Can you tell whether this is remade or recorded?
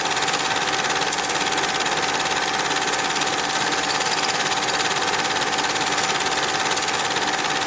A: recorded